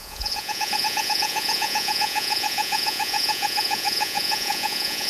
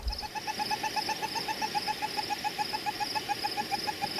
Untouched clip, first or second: second